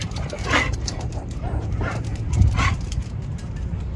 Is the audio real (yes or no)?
no